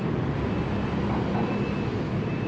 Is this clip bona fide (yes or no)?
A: yes